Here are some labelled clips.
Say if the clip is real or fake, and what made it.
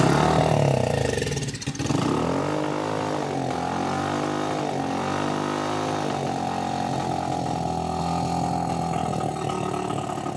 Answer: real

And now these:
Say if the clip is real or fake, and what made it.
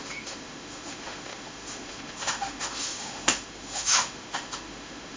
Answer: fake, autoencoder, DAC-VAE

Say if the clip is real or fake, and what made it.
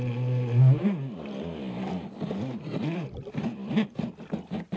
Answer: real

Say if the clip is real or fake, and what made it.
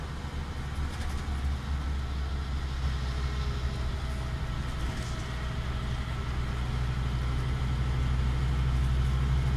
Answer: real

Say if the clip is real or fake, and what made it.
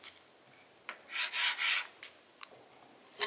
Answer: real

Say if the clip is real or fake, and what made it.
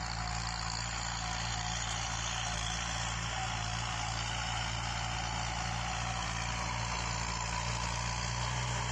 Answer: real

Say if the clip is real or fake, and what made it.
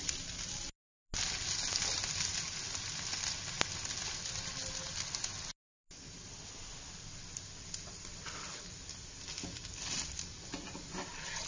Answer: real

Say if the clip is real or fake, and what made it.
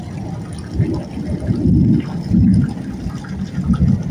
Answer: real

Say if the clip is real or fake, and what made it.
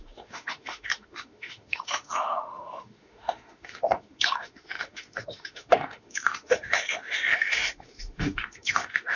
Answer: fake, autoencoder, DAC-VAE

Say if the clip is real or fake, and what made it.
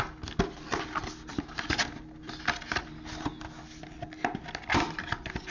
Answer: real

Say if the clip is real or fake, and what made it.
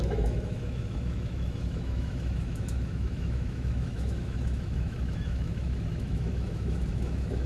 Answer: fake, autoencoder, DAC-VAE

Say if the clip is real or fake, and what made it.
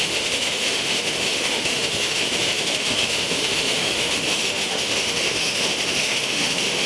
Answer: fake, autoencoder, DAC-VAE